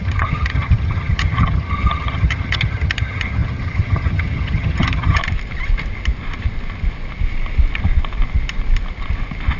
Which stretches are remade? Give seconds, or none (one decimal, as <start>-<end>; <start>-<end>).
0.0-5.2